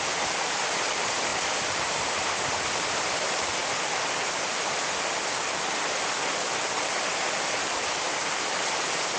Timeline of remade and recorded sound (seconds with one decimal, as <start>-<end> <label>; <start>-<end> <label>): 0.0-1.3 remade; 1.3-1.9 recorded; 1.9-3.6 remade; 3.6-8.7 recorded; 8.7-9.2 remade